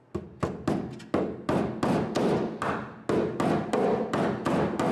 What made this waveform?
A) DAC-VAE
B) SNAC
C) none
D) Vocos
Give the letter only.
C